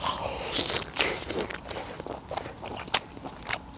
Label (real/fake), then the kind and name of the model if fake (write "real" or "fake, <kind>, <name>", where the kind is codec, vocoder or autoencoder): real